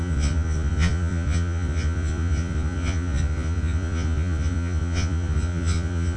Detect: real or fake fake